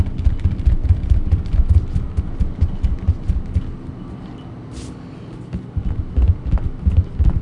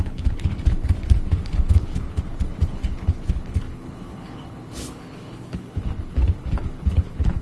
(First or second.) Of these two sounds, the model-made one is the second